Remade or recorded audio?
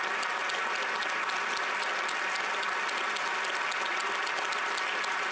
recorded